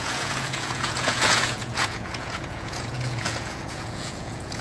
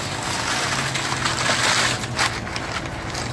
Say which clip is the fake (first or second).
first